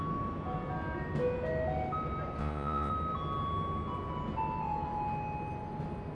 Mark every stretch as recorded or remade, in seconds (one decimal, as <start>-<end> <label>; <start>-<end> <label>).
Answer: 0.0-2.4 recorded; 2.4-2.9 remade; 2.9-6.1 recorded